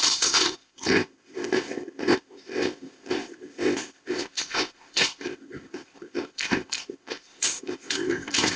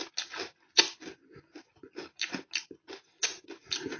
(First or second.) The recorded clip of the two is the second